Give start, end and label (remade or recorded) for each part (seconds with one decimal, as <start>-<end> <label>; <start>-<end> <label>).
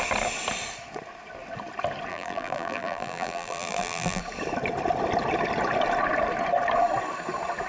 0.0-2.1 recorded; 2.1-4.2 remade; 4.2-7.7 recorded